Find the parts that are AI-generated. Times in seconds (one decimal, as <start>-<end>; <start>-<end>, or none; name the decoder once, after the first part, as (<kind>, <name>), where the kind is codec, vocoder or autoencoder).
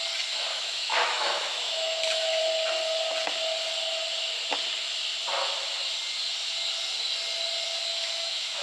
0.5-2.4 (autoencoder, DAC-VAE); 7.9-8.6